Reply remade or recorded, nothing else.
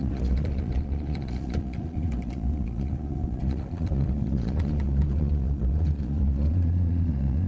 remade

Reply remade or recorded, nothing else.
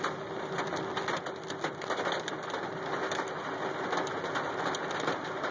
recorded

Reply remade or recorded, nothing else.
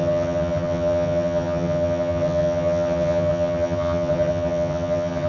remade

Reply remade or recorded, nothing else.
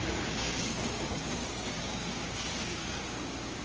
remade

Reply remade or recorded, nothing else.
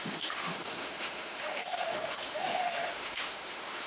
remade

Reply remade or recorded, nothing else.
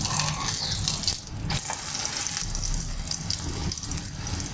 recorded